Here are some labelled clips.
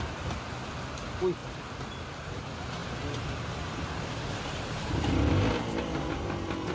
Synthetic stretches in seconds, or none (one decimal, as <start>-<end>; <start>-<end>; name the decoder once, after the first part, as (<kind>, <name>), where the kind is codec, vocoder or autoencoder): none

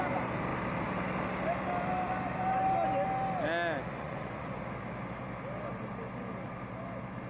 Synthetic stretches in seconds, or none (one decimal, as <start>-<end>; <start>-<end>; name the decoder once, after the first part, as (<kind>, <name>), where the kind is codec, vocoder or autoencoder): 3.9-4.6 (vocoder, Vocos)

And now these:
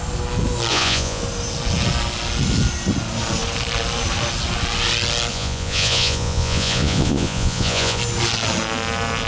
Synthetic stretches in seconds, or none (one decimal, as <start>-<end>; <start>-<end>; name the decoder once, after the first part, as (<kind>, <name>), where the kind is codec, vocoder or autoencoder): 0.7-1.2 (vocoder, Vocos); 5.3-8.0